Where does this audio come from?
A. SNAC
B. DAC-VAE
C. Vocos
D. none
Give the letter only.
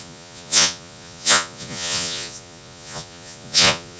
C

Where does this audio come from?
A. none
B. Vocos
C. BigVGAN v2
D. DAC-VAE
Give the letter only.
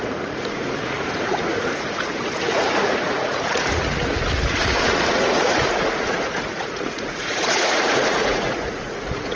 B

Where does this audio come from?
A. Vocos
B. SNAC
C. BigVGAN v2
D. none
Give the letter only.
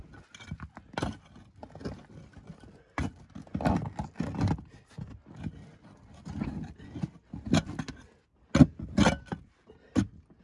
D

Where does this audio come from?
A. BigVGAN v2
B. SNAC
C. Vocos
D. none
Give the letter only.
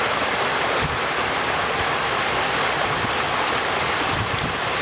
D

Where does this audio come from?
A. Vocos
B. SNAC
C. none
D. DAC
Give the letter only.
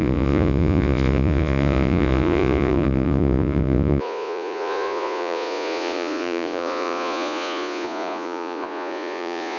A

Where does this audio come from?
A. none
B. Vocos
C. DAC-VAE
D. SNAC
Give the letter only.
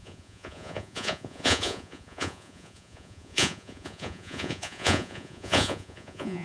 B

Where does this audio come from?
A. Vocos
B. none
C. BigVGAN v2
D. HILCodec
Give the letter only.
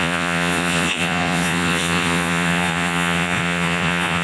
A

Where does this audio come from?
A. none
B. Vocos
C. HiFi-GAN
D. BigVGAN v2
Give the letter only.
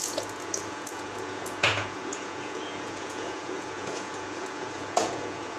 B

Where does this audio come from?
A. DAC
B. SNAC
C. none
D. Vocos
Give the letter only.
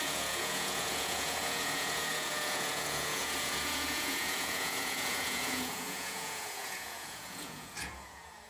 D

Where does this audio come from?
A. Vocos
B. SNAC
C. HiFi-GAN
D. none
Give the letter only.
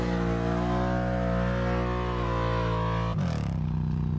D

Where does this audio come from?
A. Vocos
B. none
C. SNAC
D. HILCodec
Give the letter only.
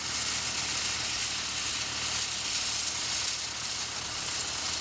B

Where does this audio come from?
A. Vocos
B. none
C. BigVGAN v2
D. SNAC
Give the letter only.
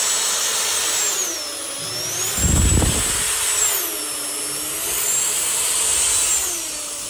B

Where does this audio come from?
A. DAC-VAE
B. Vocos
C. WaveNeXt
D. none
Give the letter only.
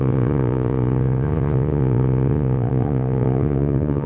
B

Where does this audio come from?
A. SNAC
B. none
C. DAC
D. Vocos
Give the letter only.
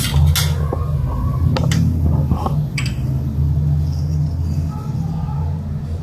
B